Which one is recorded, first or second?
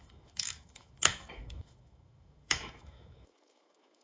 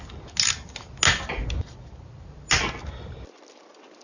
second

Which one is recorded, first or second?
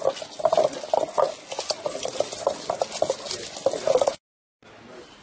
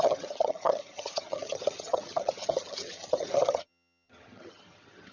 first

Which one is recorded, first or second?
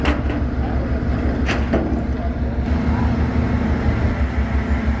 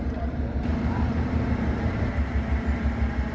first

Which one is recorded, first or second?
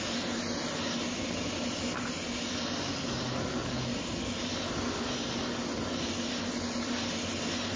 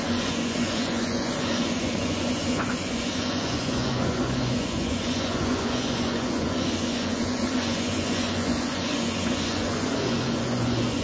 first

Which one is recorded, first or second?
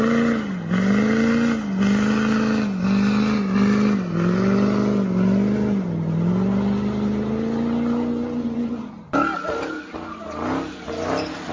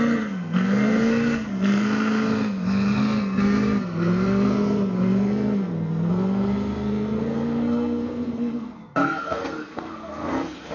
first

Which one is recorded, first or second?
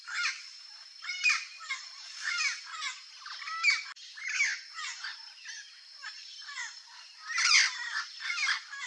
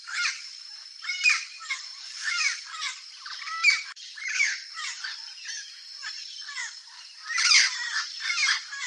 first